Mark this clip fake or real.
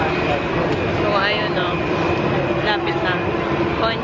fake